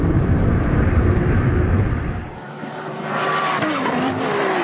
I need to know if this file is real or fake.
fake